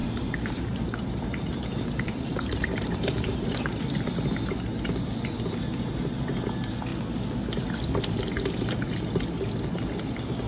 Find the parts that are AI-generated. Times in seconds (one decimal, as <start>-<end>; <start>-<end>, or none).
0.0-3.8